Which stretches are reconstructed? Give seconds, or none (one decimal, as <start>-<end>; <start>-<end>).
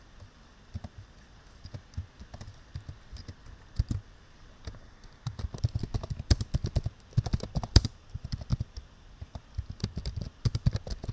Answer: 0.0-11.1